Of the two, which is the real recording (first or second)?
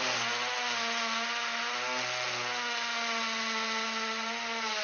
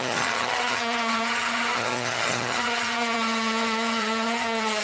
first